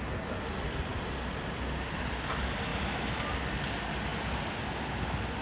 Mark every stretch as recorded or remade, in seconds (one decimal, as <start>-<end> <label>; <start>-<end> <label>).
0.0-2.7 recorded; 2.7-3.2 remade; 3.2-5.4 recorded